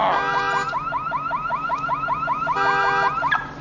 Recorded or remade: recorded